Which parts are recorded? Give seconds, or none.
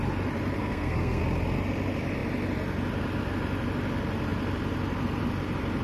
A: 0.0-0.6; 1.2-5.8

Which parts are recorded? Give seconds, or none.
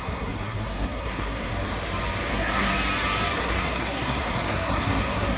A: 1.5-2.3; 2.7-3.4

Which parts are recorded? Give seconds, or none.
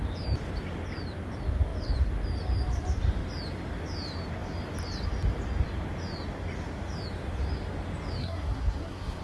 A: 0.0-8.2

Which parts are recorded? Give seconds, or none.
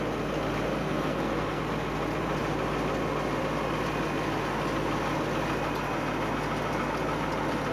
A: 0.0-0.8; 1.6-7.7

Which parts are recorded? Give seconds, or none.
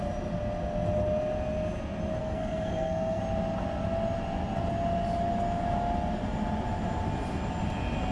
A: 0.0-2.2; 3.2-8.1